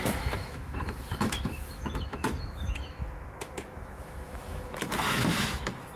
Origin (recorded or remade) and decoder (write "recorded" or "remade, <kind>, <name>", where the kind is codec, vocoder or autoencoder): remade, autoencoder, DAC-VAE